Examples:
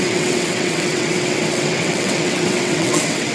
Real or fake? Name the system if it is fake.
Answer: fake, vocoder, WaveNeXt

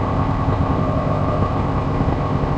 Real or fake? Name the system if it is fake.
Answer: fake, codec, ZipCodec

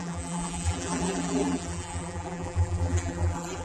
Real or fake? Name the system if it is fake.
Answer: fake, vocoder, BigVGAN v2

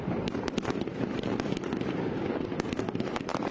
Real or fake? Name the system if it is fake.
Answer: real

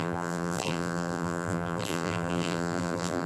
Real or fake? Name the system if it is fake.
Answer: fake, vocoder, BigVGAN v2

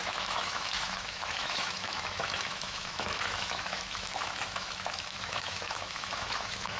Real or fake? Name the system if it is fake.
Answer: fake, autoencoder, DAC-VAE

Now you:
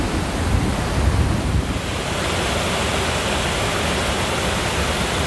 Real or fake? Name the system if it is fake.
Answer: real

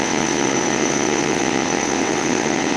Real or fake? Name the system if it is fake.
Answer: fake, vocoder, WaveNeXt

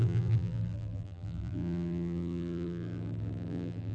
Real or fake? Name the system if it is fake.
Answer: fake, vocoder, BigVGAN v2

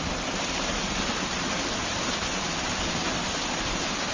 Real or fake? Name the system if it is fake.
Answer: real